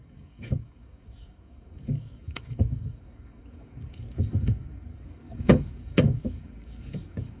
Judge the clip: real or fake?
fake